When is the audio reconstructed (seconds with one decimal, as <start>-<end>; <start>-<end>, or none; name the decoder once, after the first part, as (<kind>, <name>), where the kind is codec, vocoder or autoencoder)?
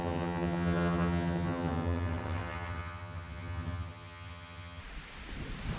0.0-4.8 (vocoder, HiFi-GAN)